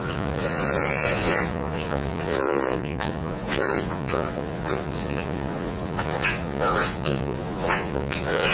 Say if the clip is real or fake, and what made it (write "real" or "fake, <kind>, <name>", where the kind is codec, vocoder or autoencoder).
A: fake, vocoder, Vocos